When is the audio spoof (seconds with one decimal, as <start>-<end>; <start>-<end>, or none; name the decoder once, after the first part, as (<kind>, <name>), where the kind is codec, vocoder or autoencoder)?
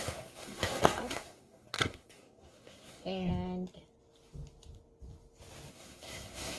0.0-3.3 (codec, SNAC); 5.7-6.6